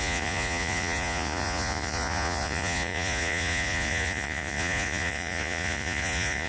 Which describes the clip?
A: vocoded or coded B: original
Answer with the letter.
A